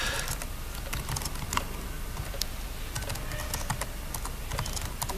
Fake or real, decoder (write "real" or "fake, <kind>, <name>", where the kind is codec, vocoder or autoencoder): real